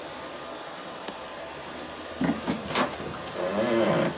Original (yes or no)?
yes